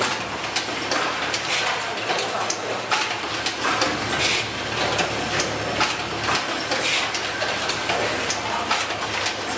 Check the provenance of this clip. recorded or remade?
recorded